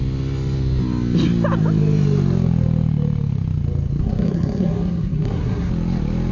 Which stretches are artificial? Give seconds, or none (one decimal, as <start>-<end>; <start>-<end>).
4.0-5.7